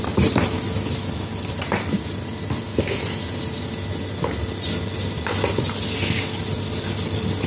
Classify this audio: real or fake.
real